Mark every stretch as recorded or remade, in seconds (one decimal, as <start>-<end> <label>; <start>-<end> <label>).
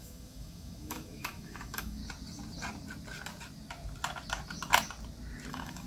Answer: 0.0-2.0 remade; 2.0-5.5 recorded; 5.5-5.9 remade